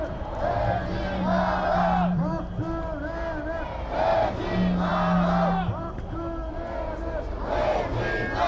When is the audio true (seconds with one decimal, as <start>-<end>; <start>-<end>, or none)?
0.0-8.5